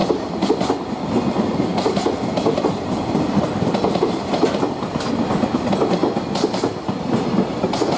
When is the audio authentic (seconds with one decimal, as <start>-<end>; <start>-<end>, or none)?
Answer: 0.9-1.7; 4.3-6.0; 6.7-8.0